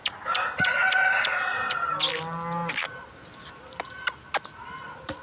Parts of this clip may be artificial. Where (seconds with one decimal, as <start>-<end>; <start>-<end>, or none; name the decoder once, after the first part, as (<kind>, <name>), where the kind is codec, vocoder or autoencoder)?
none